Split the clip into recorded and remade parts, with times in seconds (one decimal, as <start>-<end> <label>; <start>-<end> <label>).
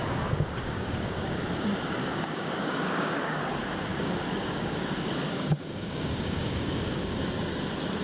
0.0-1.4 remade; 1.4-2.0 recorded; 2.0-3.4 remade; 3.4-3.9 recorded; 3.9-7.2 remade; 7.2-8.0 recorded